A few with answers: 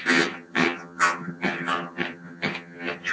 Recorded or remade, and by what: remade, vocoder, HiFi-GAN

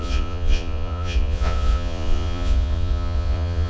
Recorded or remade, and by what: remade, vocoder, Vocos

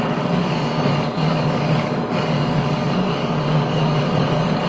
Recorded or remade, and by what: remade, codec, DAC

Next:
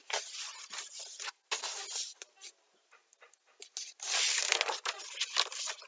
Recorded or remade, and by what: recorded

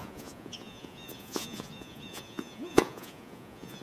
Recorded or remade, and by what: remade, vocoder, Vocos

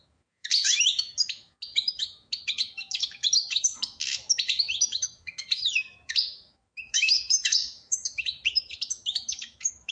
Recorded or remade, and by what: remade, autoencoder, DAC-VAE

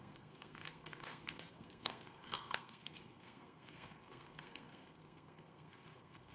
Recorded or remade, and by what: remade, codec, SNAC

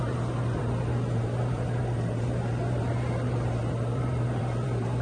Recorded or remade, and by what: remade, vocoder, BigVGAN v2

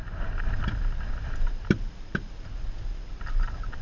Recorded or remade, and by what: recorded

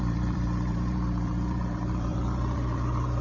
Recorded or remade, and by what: remade, vocoder, BigVGAN v2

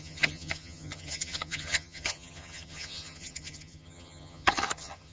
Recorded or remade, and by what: remade, vocoder, HiFi-GAN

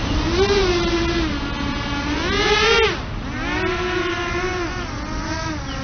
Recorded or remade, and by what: recorded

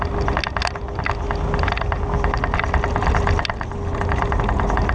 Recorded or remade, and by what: recorded